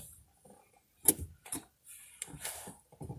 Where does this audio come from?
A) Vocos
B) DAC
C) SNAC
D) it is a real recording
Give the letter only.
D